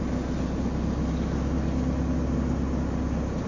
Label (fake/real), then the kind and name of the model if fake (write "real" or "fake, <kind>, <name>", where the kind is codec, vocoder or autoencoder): real